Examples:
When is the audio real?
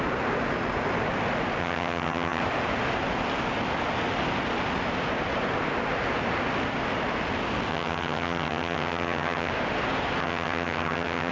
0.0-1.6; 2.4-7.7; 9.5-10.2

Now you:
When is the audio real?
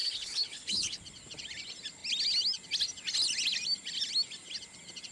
1.0-5.1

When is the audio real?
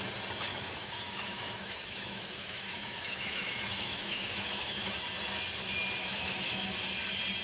0.0-0.5; 4.9-6.0; 6.7-7.4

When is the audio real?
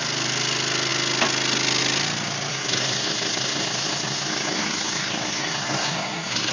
0.0-2.5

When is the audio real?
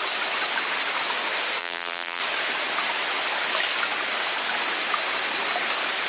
0.0-1.6; 2.2-6.1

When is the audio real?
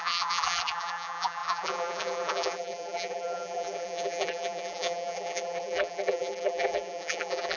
none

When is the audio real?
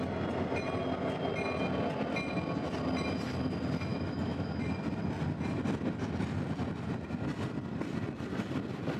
0.0-3.9; 4.6-9.0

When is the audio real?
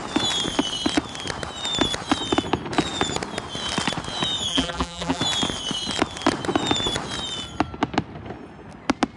0.0-4.5; 5.2-9.2